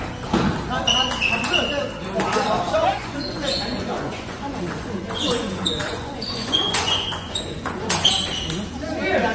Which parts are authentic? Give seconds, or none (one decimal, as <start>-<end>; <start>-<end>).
0.0-2.9; 8.1-9.3